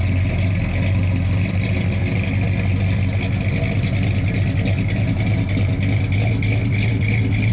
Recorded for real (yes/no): yes